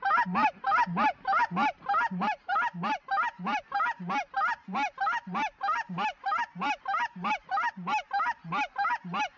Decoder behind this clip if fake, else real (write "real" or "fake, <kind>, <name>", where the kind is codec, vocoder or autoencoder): real